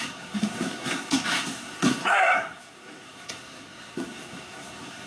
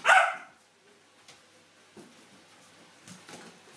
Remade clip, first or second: first